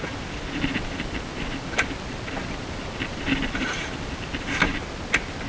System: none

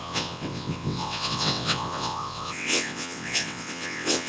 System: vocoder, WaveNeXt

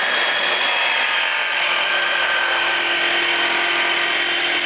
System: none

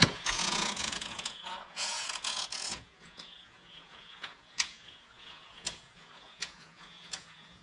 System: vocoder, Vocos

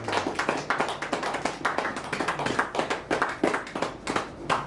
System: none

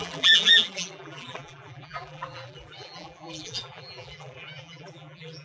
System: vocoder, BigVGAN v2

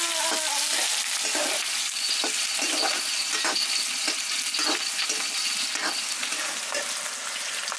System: none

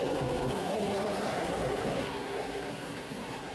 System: codec, SNAC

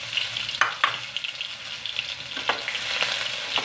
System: none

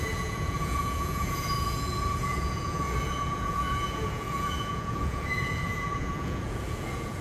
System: vocoder, Vocos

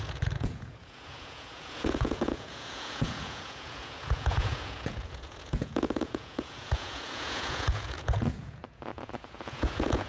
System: vocoder, Vocos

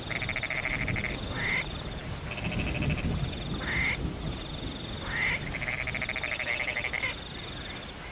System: none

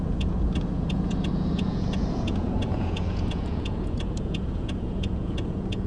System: vocoder, Vocos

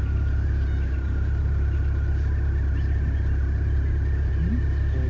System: none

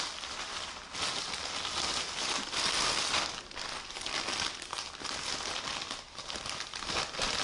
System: none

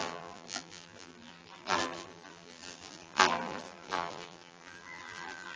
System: vocoder, BigVGAN v2